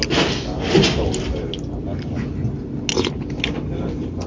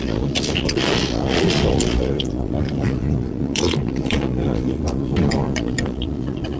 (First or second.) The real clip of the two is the first